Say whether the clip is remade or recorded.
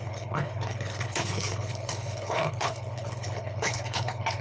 remade